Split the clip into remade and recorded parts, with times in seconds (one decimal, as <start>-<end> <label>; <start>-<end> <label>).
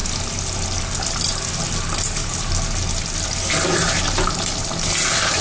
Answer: 0.0-5.4 recorded